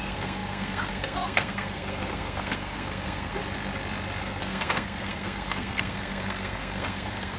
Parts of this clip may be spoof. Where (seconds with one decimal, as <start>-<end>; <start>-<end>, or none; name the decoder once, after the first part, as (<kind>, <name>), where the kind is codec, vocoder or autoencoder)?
0.0-3.4 (codec, SNAC); 4.2-7.4